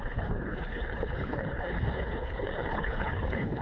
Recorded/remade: remade